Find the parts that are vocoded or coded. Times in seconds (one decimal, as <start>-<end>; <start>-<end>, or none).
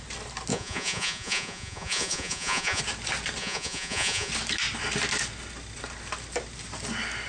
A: 0.5-2.8; 3.4-4.3